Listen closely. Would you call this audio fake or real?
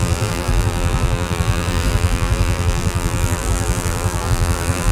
fake